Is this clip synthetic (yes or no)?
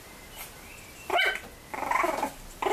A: no